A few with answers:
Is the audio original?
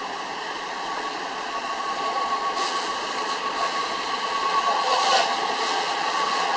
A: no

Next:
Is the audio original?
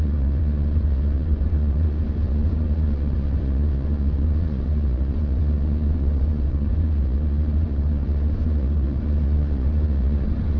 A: no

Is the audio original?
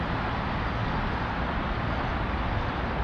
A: yes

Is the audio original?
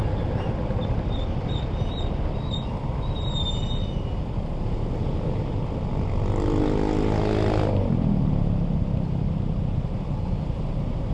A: yes